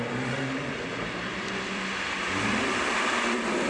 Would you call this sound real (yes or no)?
no